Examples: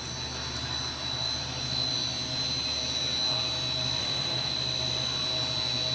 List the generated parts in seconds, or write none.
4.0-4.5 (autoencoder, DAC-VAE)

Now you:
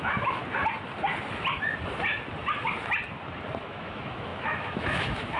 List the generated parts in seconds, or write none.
0.0-0.4 (autoencoder, DAC-VAE); 3.6-5.4

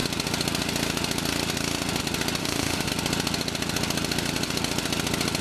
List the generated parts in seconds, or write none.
2.4-2.9 (autoencoder, DAC-VAE)

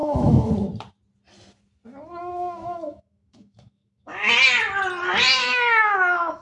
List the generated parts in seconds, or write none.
0.0-0.5 (autoencoder, DAC-VAE); 2.2-4.3; 5.4-6.4

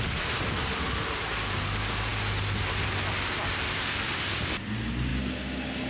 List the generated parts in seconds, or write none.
none

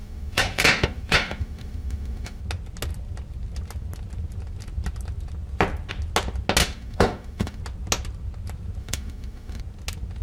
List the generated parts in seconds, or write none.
0.0-2.4 (autoencoder, DAC-VAE); 6.6-7.6; 8.8-9.6

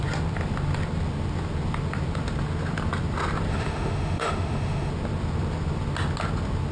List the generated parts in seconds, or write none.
3.5-4.9 (autoencoder, DAC-VAE)

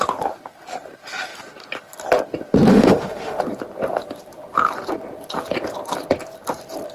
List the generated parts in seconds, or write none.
2.7-3.4 (autoencoder, DAC-VAE)